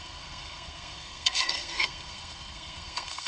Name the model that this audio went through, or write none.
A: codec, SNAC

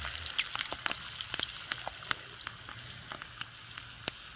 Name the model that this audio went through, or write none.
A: none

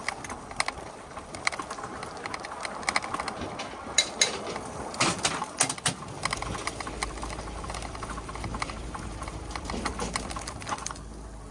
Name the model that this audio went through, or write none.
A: none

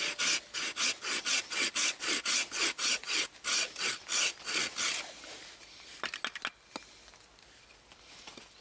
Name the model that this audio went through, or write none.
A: none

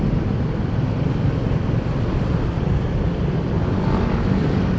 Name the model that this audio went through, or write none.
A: none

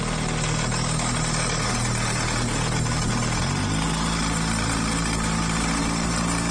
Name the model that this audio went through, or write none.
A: none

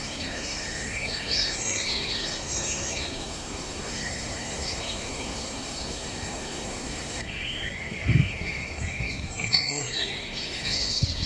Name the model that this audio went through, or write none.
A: codec, SNAC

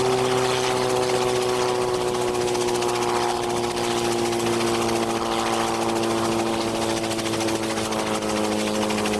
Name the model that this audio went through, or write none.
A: none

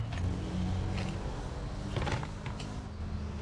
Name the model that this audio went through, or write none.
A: none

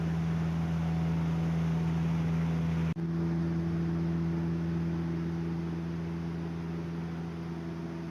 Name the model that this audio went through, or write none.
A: none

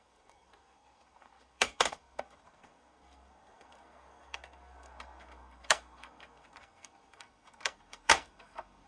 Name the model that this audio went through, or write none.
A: codec, SNAC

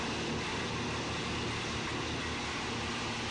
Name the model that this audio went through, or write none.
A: none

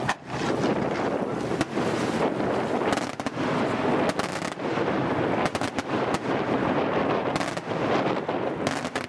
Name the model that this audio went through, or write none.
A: none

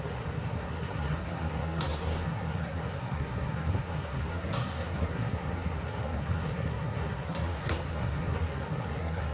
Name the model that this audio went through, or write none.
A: codec, SNAC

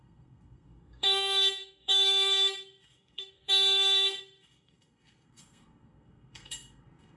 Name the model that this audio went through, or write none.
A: codec, SNAC